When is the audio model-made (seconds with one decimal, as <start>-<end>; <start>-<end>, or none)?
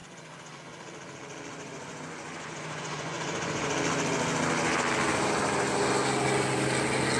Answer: 0.0-0.6; 1.5-3.7